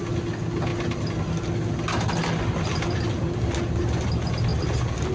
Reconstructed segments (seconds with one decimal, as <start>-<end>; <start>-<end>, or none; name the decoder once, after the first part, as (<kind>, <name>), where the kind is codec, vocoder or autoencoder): none

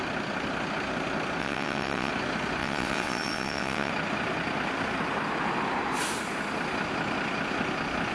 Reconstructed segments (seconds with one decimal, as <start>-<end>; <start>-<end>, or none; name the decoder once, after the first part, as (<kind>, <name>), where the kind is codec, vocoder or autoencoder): 1.4-2.1 (vocoder, WaveNeXt); 2.6-3.9

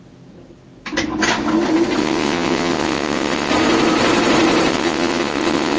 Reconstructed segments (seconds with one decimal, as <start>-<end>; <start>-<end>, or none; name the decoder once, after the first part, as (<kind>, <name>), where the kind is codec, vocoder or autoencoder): 2.0-3.5 (vocoder, WaveNeXt); 4.7-5.8

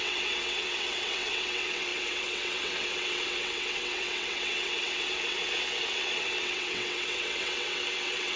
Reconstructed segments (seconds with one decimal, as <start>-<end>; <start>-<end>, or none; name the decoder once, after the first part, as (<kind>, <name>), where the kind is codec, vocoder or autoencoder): 0.0-8.4 (vocoder, WaveNeXt)

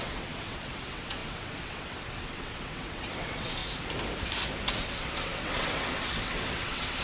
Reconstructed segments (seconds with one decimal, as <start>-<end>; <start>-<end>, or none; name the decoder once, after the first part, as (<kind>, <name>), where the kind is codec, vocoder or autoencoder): 0.0-3.6 (vocoder, WaveNeXt); 4.7-7.0

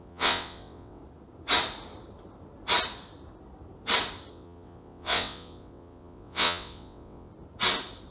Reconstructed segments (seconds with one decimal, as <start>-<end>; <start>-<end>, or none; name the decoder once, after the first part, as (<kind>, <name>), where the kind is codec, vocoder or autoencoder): 0.0-1.0 (vocoder, WaveNeXt); 4.3-7.3